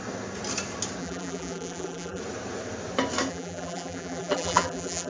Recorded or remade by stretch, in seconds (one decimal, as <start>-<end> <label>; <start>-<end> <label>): 0.0-1.0 recorded; 1.0-2.2 remade; 2.2-3.3 recorded; 3.3-5.1 remade